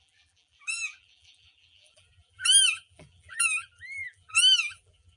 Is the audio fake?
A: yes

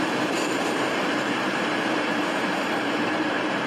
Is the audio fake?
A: yes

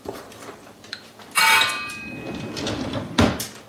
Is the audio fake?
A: yes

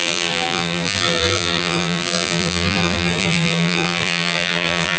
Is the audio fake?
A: yes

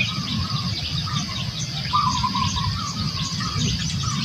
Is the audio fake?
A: yes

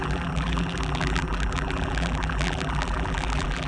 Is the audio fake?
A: yes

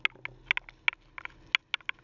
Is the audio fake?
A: no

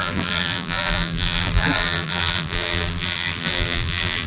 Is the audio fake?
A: yes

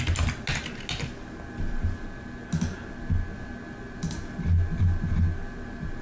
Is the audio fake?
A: no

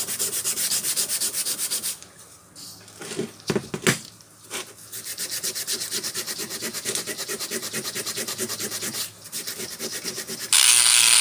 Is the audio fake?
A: no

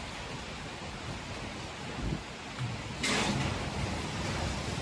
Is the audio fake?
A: no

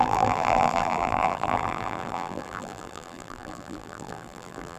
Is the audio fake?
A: yes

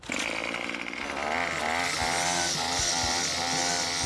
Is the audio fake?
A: no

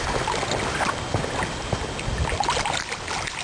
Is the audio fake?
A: no